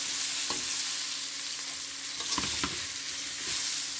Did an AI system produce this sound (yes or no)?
no